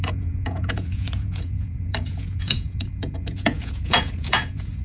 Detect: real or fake fake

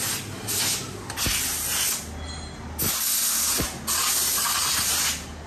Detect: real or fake real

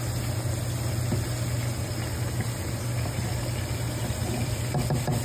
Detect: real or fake real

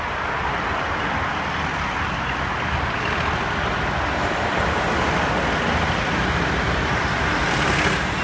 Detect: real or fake real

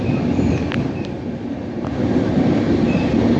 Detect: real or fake real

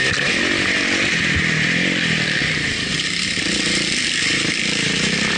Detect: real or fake real